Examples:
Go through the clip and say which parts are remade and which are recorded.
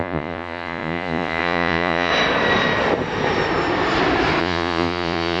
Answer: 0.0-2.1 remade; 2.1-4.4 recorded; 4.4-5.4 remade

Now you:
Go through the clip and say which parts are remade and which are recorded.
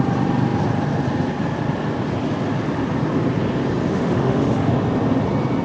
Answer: 0.0-3.9 recorded; 3.9-4.7 remade; 4.7-5.6 recorded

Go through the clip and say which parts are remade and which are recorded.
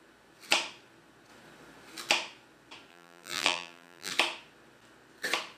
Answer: 0.0-2.9 recorded; 2.9-4.1 remade; 4.1-5.6 recorded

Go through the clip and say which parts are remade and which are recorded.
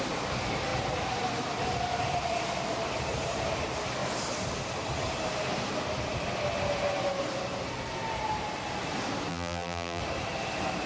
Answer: 0.0-9.3 recorded; 9.3-10.0 remade; 10.0-10.9 recorded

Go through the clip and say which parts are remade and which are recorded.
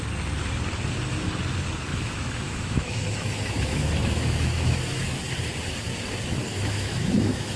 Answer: 0.0-1.9 recorded; 1.9-5.2 remade; 5.2-6.5 recorded; 6.5-7.6 remade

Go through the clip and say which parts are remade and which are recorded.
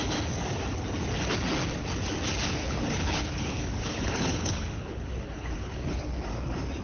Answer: 0.0-2.6 recorded; 2.6-6.0 remade; 6.0-6.8 recorded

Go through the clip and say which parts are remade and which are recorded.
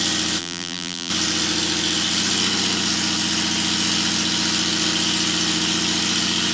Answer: 0.0-0.4 recorded; 0.4-1.1 remade; 1.1-6.5 recorded